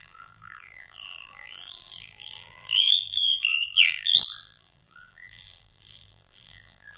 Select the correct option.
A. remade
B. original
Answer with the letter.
A